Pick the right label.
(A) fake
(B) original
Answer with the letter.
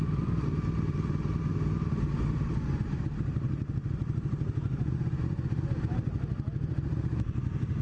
A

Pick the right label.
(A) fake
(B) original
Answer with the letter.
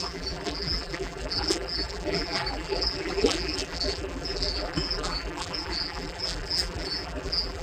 A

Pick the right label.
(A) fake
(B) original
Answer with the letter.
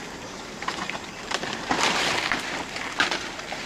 A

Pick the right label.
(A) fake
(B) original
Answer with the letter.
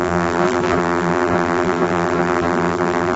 A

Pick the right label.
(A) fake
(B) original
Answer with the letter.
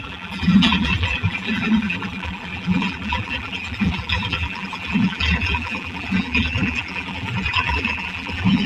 A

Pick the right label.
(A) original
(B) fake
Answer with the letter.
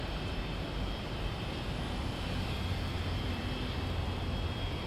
A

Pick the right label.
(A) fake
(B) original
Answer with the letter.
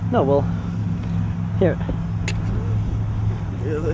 B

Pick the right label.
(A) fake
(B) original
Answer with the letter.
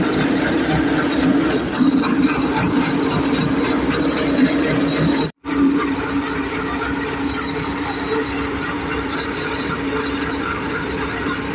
A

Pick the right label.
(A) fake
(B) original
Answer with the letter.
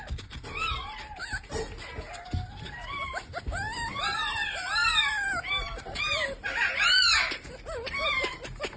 A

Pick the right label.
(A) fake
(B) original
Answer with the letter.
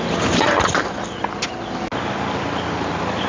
B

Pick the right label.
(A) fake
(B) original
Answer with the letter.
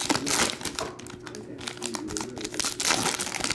B